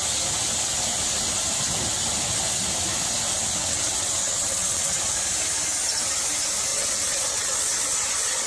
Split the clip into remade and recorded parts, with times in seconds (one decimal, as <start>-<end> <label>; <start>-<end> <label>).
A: 0.0-3.6 recorded; 3.6-5.0 remade; 5.0-6.7 recorded; 6.7-8.5 remade